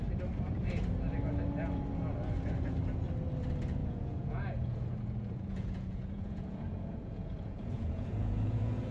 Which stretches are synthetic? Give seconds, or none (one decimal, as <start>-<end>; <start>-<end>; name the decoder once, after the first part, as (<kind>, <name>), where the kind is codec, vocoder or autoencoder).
3.8-8.9 (vocoder, Vocos)